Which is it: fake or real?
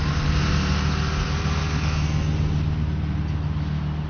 real